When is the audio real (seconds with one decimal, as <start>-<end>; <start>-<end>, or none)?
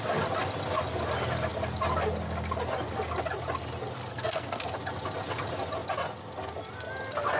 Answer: 0.0-4.1; 4.6-7.4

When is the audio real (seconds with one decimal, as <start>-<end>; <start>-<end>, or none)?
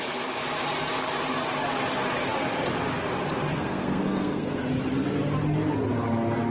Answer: 0.0-3.5; 4.6-6.5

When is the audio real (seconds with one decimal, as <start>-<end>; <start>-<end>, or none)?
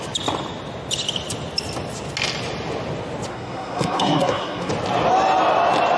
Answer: 0.0-3.3; 4.7-6.0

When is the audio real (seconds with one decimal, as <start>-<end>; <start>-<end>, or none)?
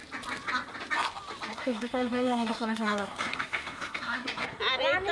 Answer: 0.0-1.5; 4.6-5.1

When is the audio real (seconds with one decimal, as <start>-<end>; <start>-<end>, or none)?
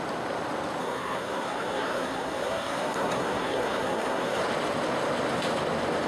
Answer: 0.0-0.8; 4.4-6.1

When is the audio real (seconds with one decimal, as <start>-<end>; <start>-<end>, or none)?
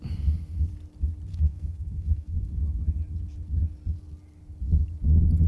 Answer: 0.0-1.3; 2.5-5.5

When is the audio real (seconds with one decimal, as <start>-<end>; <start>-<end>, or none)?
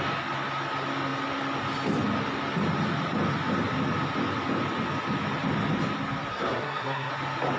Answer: 0.0-6.3; 7.1-7.6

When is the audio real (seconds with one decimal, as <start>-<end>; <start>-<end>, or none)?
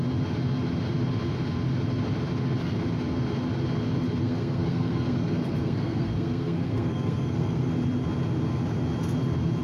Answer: 0.0-4.2; 7.7-9.6